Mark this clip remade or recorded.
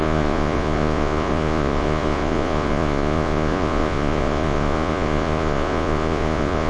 remade